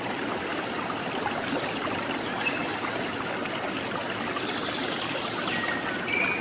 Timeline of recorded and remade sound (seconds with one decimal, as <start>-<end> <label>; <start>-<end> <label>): 0.0-6.4 recorded